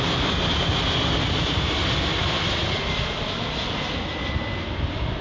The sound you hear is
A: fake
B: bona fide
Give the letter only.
B